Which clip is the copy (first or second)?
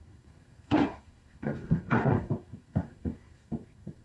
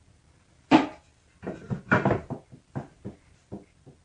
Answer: first